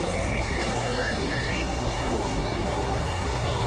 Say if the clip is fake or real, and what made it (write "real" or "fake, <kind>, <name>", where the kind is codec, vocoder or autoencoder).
fake, codec, SNAC